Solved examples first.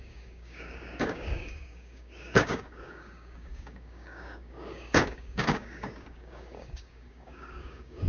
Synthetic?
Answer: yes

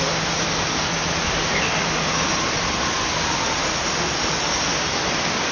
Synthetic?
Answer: no